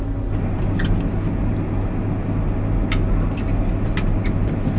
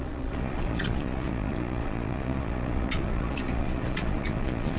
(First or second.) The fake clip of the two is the second